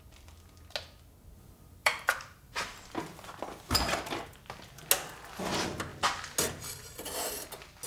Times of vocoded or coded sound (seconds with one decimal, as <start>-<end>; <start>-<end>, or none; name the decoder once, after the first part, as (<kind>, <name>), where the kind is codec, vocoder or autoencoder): 1.8-2.8 (vocoder, BigVGAN v2)